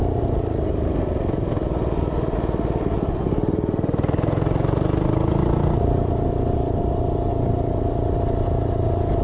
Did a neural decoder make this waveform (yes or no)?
no